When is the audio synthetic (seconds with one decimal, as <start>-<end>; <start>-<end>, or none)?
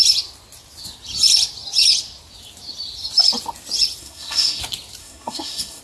4.0-4.6; 5.0-5.8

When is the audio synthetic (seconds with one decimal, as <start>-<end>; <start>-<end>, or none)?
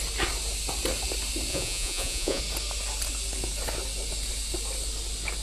1.5-2.4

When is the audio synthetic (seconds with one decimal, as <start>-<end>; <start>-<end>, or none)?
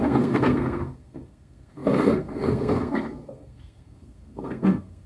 0.0-5.1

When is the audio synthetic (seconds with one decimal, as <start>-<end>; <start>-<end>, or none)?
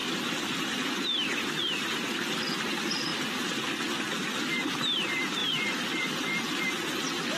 0.0-1.6; 5.4-6.6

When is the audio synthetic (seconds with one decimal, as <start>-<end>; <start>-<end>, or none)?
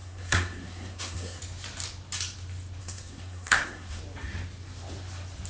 0.0-1.4; 2.8-4.0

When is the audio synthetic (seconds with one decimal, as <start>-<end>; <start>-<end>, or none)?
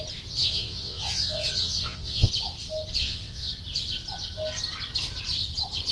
0.4-2.3; 3.0-3.5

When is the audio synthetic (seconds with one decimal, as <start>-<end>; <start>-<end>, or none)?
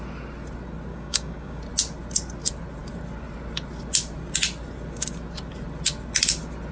0.9-1.6